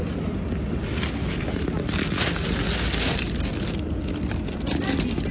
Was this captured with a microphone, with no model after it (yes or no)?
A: yes